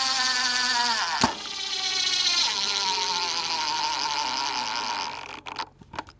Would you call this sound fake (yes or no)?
no